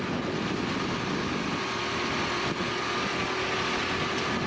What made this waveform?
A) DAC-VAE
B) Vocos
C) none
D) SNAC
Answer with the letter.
C